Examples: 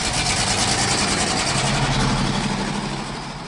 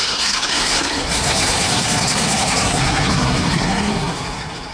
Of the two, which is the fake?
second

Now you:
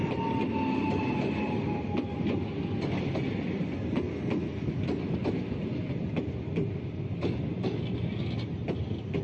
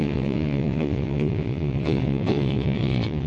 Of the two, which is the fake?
second